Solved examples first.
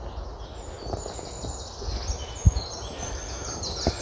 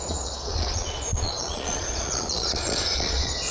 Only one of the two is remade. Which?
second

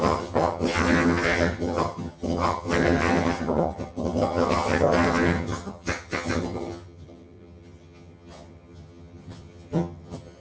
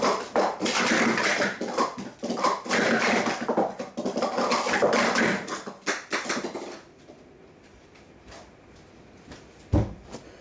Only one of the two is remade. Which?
first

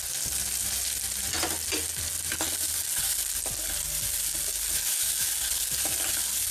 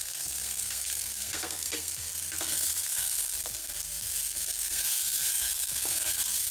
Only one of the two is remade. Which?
second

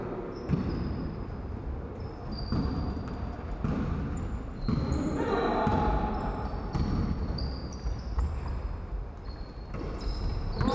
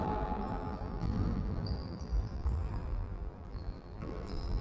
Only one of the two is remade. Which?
second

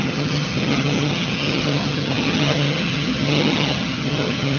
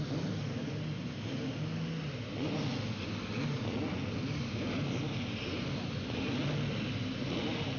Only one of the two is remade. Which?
first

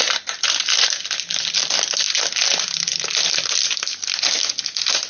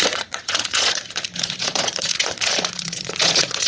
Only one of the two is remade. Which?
second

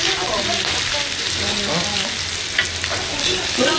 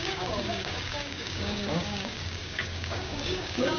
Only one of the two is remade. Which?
second